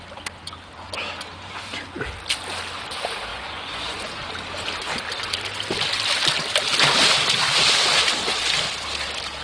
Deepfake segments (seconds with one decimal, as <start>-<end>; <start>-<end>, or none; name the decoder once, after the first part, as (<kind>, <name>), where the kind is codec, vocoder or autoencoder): 3.3-4.3 (vocoder, Vocos)